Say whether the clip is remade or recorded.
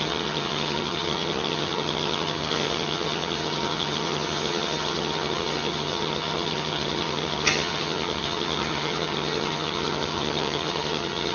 remade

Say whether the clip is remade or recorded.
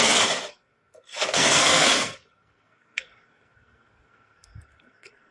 remade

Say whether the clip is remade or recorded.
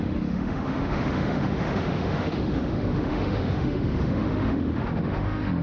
remade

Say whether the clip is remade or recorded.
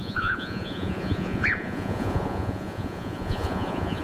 remade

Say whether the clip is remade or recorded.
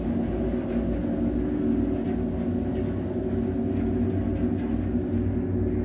recorded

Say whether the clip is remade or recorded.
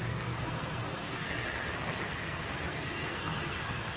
remade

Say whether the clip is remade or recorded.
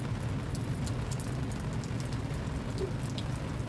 recorded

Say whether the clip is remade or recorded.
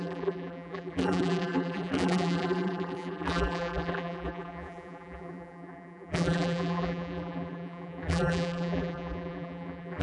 remade